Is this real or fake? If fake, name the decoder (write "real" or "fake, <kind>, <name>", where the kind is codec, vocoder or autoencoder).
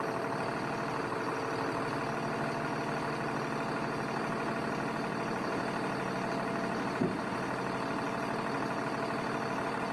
real